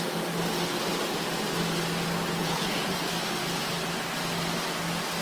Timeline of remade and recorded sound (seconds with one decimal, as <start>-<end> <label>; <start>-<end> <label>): 0.0-2.4 recorded; 2.4-3.0 remade; 3.0-5.2 recorded